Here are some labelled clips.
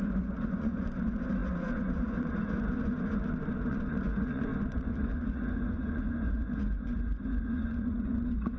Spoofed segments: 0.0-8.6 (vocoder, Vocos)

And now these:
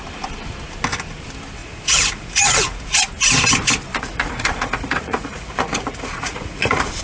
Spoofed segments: 1.6-3.1 (vocoder, Vocos); 3.9-7.0

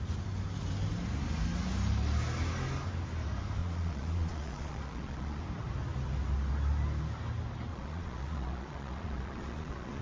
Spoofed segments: 3.6-5.4 (vocoder, Vocos); 7.7-10.0

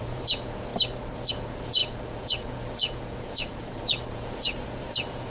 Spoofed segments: 0.0-0.7 (vocoder, Vocos); 1.3-5.3

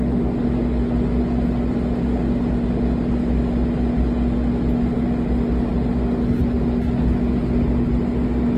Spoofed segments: none

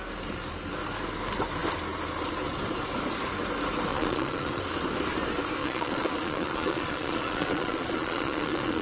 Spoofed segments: 3.9-4.6 (vocoder, Vocos); 5.6-8.8

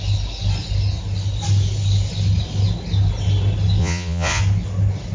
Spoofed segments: 3.8-4.4 (vocoder, Vocos)